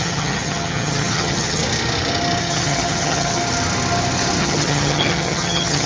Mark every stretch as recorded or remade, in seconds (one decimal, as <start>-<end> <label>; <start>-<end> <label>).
0.0-1.6 remade; 1.6-2.4 recorded; 2.4-3.4 remade; 3.4-4.4 recorded; 4.4-5.9 remade